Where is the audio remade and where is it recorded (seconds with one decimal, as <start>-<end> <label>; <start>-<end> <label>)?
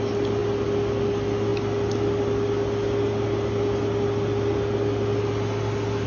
0.0-6.1 recorded